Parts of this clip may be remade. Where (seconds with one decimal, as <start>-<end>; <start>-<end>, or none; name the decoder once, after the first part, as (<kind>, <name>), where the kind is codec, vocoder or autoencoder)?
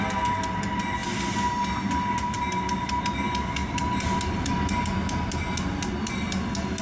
3.6-4.8 (vocoder, BigVGAN v2)